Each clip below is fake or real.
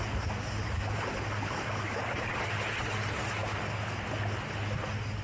real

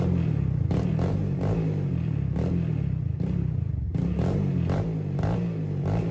real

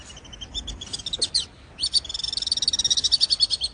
real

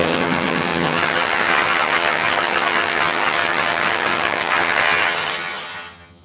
fake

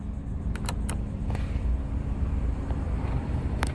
fake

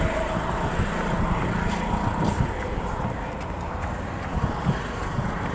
real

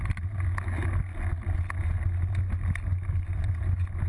real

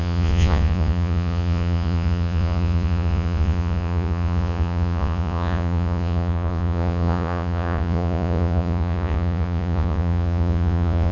fake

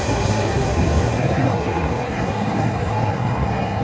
fake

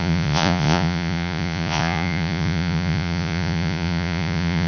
fake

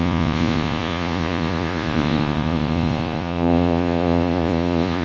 fake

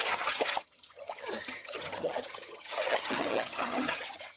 fake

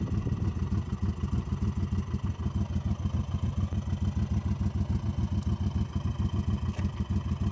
real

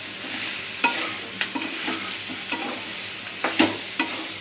real